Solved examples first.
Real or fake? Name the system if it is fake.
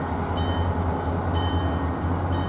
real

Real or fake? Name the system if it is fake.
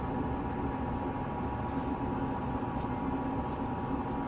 real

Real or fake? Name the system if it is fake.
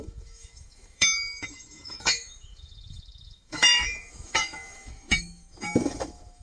fake, autoencoder, DAC-VAE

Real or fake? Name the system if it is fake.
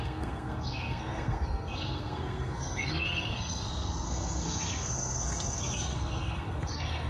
fake, codec, SNAC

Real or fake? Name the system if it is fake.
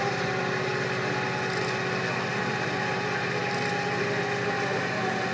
real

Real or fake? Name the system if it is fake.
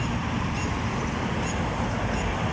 real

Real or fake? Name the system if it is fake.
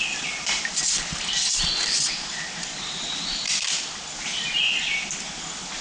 real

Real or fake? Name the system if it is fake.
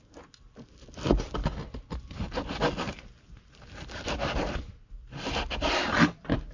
real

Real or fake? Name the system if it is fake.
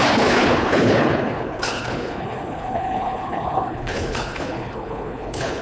fake, codec, HILCodec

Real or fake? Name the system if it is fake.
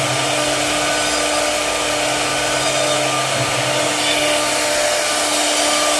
real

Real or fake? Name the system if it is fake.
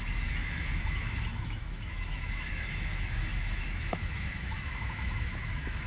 fake, autoencoder, DAC-VAE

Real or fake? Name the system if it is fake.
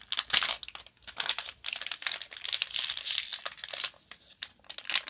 real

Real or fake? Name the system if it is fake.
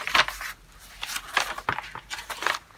real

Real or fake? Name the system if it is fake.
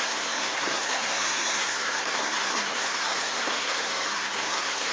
fake, codec, SNAC